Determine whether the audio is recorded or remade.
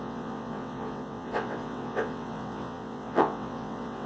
remade